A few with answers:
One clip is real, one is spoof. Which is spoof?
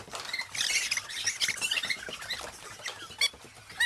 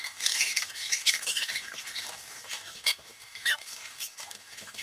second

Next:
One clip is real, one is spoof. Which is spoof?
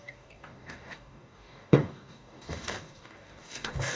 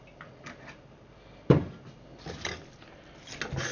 first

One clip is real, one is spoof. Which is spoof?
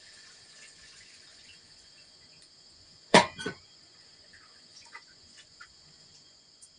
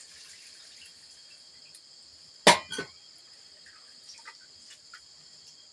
first